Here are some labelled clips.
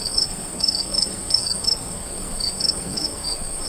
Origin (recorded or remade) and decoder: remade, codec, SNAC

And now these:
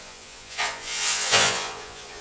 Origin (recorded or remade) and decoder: remade, vocoder, Vocos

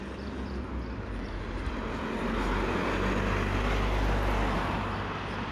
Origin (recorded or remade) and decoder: recorded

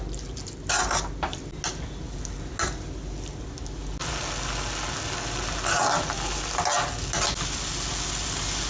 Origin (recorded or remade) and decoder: recorded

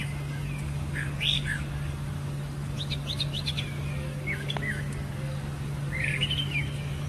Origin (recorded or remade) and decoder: remade, codec, DAC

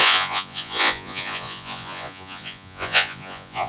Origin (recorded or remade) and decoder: remade, vocoder, Vocos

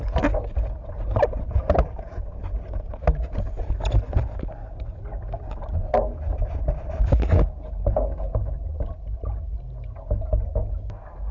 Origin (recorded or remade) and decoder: recorded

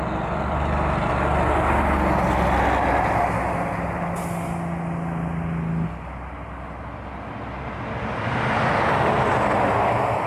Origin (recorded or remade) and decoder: recorded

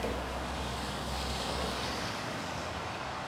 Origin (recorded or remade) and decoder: remade, codec, DAC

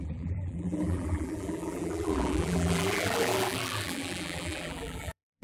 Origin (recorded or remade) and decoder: remade, vocoder, BigVGAN v2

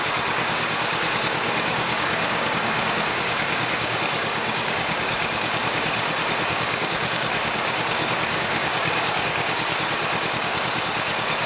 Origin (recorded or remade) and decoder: remade, codec, DAC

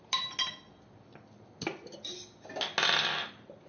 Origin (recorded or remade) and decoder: recorded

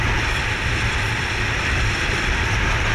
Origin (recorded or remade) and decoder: remade, vocoder, BigVGAN v2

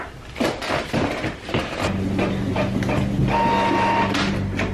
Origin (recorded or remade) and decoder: recorded